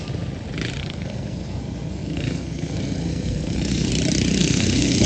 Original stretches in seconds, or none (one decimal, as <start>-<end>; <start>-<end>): 0.0-0.8; 3.9-4.4